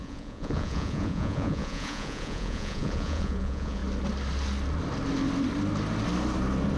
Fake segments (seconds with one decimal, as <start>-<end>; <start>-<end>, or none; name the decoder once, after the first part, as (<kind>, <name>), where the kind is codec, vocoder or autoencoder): 0.0-3.8 (vocoder, Vocos)